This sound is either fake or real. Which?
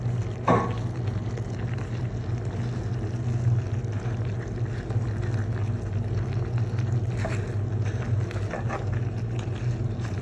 real